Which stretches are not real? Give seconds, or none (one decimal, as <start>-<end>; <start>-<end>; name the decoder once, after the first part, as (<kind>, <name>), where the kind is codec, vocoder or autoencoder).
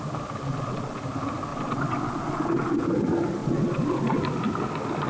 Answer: 0.5-1.0 (vocoder, Vocos); 1.5-2.8; 3.4-4.2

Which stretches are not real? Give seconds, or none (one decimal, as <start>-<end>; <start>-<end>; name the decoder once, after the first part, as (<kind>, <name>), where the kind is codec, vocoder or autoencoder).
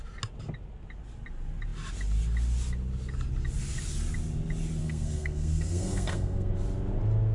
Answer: 4.8-6.5 (codec, SNAC)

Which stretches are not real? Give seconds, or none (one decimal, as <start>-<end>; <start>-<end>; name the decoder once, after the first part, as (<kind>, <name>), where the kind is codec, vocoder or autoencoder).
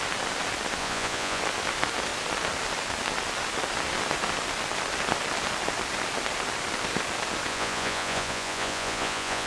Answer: 0.8-1.4 (vocoder, Vocos); 7.5-9.5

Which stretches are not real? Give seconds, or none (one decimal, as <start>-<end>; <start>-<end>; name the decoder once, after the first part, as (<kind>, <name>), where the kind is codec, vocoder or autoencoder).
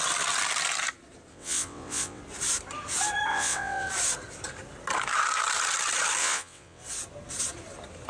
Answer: 1.3-2.2 (vocoder, WaveNeXt); 3.3-3.9; 6.2-6.8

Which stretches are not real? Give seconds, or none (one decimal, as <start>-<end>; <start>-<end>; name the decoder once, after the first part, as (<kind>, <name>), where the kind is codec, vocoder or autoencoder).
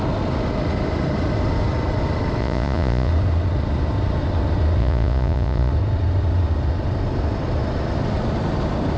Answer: 2.4-3.1 (vocoder, Vocos); 4.8-5.7